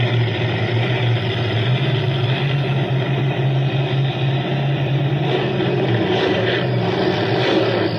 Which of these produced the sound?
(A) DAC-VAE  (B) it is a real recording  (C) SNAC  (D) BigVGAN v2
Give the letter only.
B